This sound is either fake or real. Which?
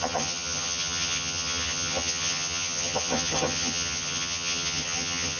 fake